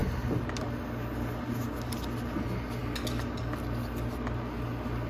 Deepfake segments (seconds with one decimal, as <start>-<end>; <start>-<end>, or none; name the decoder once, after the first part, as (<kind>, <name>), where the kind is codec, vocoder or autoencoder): none